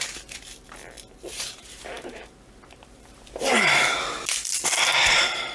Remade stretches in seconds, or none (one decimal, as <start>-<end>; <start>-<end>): 1.3-4.2